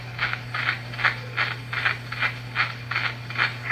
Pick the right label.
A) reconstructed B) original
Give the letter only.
B